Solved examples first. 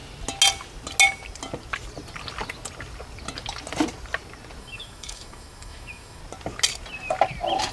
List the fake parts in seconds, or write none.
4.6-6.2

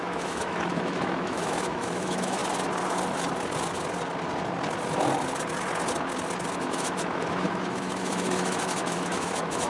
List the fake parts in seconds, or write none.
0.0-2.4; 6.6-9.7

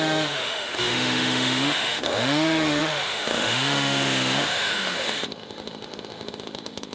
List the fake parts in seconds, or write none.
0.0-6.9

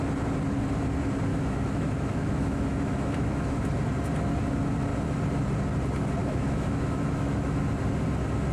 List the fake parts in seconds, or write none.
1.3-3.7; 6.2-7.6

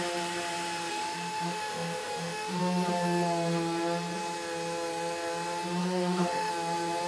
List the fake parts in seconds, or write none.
0.9-2.6; 5.8-6.5